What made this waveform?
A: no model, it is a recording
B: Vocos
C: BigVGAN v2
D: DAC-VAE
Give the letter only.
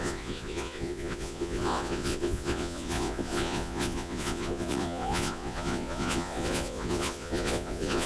B